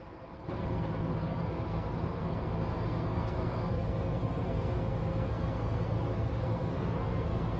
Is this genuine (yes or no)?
no